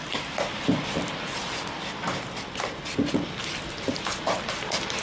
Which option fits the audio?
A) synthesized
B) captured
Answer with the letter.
B